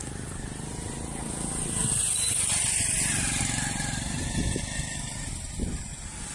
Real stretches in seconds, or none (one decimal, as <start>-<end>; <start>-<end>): 0.0-6.3